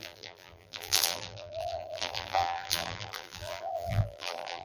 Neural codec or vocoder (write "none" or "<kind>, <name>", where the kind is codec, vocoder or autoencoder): vocoder, BigVGAN v2